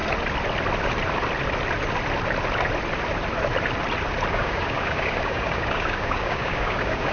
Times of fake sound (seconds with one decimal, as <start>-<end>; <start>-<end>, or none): 4.3-7.1